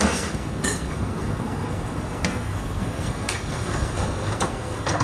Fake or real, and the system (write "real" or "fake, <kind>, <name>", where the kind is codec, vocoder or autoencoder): fake, codec, SNAC